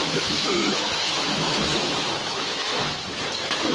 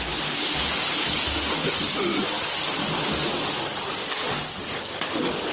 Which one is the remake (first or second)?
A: first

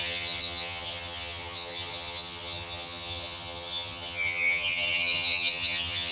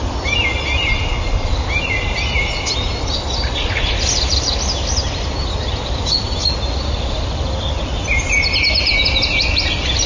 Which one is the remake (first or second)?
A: first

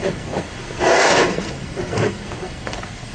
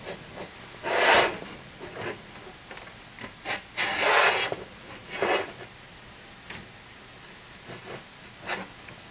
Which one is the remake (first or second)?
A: first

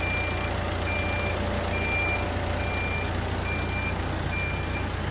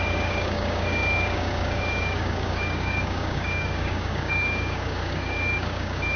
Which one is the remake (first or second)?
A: second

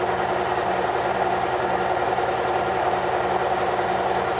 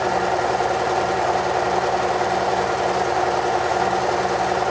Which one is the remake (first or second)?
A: second